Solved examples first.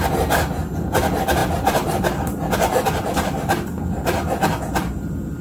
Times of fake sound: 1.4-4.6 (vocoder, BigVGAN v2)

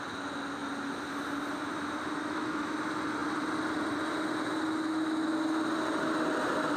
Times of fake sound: 2.2-2.7 (autoencoder, DAC-VAE)

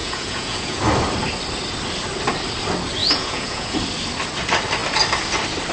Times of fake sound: 0.0-0.8 (vocoder, Vocos); 3.0-3.8

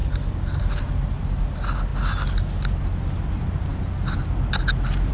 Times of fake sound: none

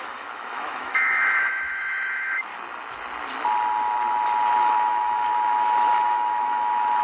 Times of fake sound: 0.0-2.5 (autoencoder, DAC-VAE); 4.5-7.0